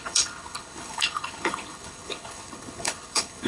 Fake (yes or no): yes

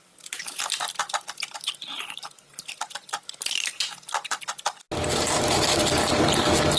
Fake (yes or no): no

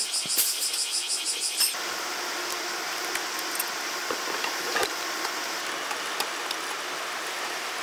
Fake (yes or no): no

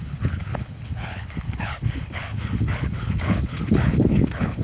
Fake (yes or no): yes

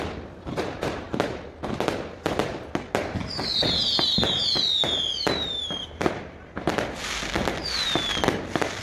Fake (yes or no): no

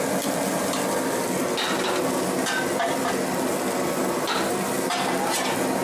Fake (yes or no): no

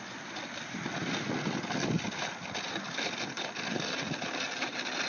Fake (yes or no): no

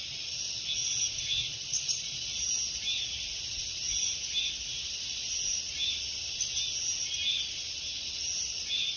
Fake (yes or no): no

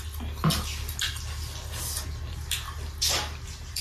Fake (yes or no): no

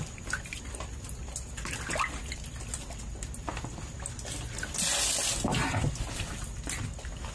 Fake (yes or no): no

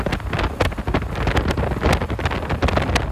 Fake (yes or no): no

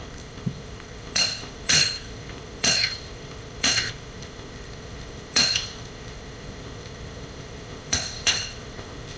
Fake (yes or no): yes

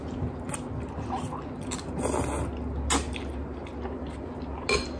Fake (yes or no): no